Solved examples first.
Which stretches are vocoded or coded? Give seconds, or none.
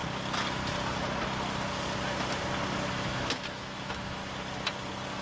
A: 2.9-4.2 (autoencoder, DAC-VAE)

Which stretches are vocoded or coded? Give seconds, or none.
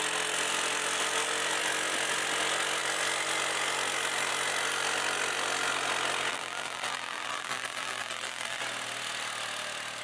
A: 6.3-8.6 (vocoder, BigVGAN v2)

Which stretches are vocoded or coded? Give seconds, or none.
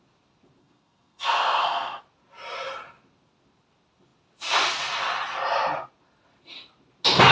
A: 0.6-2.0 (codec, SNAC)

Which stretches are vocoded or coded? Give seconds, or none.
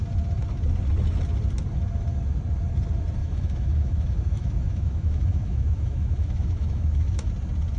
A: 3.2-7.3 (autoencoder, DAC-VAE)